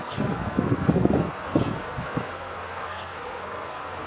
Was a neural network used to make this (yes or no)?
yes